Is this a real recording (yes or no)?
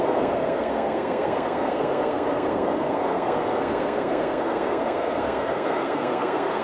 no